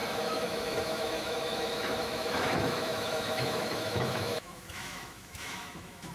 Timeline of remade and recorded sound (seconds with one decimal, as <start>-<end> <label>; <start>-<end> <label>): 0.0-6.1 remade